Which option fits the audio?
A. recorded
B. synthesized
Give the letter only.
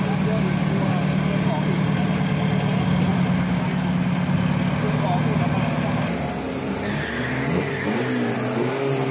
A